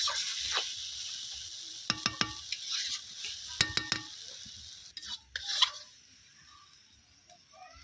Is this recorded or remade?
recorded